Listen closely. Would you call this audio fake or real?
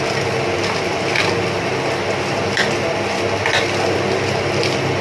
real